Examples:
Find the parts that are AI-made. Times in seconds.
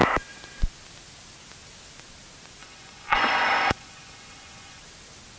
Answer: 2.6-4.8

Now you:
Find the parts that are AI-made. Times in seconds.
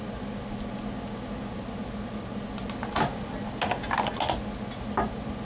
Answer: none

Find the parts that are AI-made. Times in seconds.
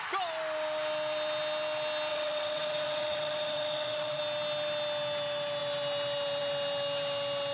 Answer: 2.1-4.2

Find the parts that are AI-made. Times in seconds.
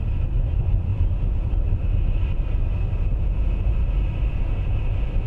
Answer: 0.9-1.5; 3.1-3.6; 4.3-4.8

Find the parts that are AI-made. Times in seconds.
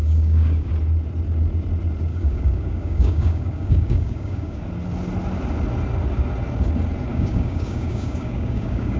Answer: 0.0-0.7; 2.1-4.6; 7.1-9.0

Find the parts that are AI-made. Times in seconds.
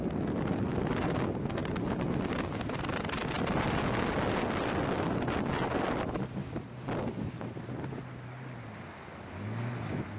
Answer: none